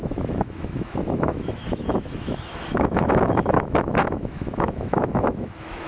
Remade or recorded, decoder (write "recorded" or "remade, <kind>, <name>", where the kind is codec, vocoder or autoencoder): remade, autoencoder, DAC-VAE